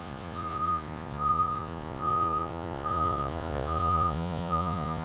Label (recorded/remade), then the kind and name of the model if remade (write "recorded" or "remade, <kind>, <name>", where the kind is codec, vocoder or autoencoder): remade, vocoder, Vocos